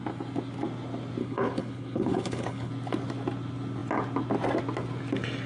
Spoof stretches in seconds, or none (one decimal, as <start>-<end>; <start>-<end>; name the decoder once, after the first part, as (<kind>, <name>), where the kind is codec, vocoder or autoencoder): 1.2-2.7 (codec, HILCodec)